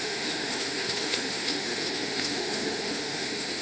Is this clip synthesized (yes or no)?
yes